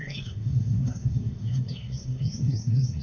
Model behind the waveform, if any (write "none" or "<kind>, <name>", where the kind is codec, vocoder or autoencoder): codec, SNAC